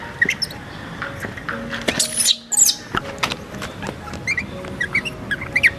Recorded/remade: recorded